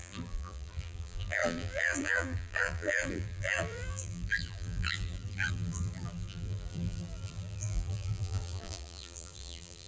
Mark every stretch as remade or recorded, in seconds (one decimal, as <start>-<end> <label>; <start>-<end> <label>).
0.0-9.9 remade